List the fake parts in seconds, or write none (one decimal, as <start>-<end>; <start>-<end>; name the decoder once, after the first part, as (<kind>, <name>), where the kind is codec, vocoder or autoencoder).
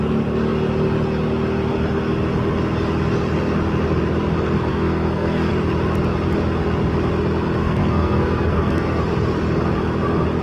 4.7-5.5 (codec, SNAC); 7.6-9.0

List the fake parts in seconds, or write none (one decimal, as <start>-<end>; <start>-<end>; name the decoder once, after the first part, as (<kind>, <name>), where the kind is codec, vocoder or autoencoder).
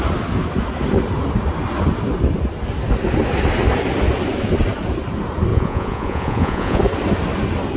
5.5-6.8 (vocoder, Vocos)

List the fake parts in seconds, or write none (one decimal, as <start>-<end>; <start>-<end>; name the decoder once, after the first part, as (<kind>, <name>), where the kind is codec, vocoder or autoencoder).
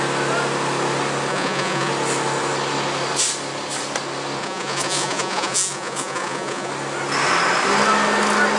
1.3-1.9 (vocoder, Vocos); 4.4-6.7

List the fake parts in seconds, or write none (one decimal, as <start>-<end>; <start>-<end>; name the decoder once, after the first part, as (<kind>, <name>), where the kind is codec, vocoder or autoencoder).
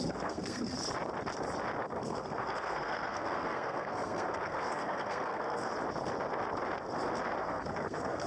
0.0-0.8 (codec, SNAC); 1.8-5.7; 7.4-8.3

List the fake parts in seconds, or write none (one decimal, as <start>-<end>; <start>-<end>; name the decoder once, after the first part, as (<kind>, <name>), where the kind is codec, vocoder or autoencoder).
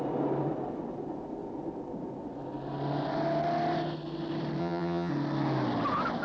4.6-5.1 (vocoder, HiFi-GAN)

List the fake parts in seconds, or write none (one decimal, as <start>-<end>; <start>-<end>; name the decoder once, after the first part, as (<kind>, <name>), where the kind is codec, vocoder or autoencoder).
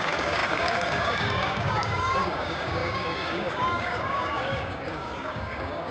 0.0-5.9 (codec, DAC)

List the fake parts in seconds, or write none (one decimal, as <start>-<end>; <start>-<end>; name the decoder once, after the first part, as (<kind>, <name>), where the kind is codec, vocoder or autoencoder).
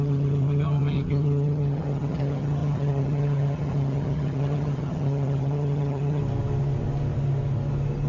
0.0-6.2 (vocoder, HiFi-GAN)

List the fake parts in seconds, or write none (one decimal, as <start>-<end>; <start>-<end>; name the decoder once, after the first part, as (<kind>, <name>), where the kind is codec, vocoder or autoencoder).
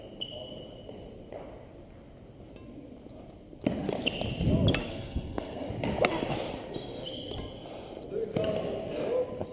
4.9-5.7 (codec, SNAC)